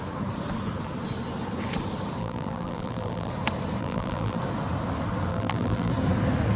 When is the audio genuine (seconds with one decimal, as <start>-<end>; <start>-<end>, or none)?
0.0-2.2; 3.3-3.8; 4.4-5.3; 5.9-6.6